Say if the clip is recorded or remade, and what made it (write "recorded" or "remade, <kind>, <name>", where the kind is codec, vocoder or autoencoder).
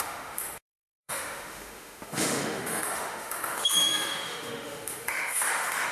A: remade, autoencoder, DAC-VAE